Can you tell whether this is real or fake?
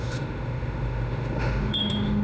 fake